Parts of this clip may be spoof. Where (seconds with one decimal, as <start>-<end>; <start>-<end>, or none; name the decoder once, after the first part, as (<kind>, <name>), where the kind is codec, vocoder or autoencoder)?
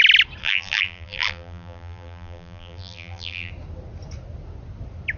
0.4-3.5 (vocoder, BigVGAN v2)